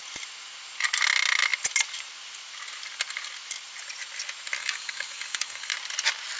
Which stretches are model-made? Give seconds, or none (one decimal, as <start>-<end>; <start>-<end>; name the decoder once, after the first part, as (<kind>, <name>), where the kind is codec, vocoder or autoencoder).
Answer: 4.6-5.7 (codec, DAC)